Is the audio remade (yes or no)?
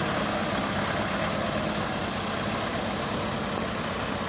no